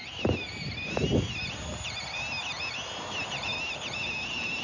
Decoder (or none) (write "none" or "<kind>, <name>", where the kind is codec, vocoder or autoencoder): none